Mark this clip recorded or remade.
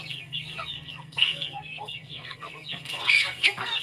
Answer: remade